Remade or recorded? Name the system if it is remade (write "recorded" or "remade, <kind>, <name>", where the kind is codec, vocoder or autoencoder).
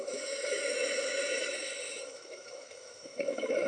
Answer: remade, autoencoder, DAC-VAE